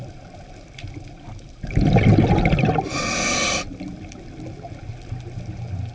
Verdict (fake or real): real